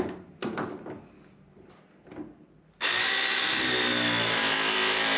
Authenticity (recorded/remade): recorded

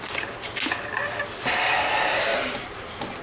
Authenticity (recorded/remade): recorded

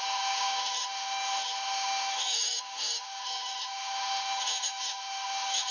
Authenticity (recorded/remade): remade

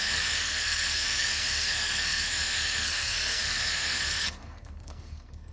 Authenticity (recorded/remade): remade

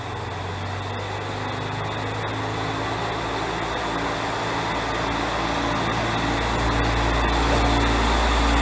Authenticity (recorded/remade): recorded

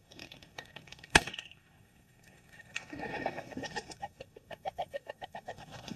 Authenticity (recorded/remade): remade